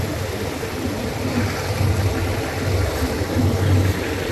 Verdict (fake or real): real